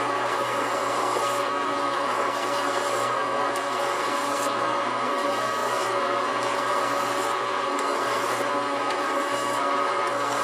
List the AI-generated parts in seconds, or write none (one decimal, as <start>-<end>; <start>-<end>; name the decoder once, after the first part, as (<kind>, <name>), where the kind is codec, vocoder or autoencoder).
0.0-10.4 (codec, SNAC)